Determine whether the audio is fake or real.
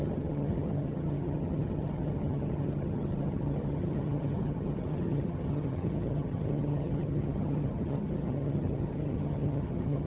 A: fake